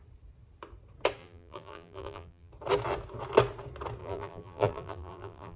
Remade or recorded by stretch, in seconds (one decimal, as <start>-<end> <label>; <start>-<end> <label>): 0.0-1.2 recorded; 1.2-2.5 remade; 2.5-4.0 recorded; 4.0-5.6 remade